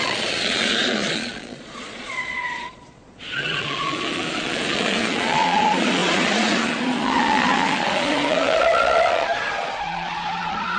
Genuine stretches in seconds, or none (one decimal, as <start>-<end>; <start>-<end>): none